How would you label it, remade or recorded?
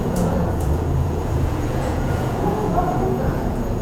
remade